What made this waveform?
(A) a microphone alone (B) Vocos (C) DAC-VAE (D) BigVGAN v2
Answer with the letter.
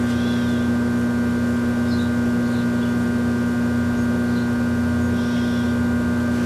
A